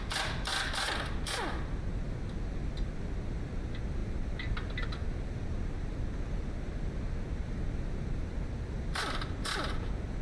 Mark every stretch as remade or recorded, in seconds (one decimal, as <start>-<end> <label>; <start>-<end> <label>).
0.0-10.2 recorded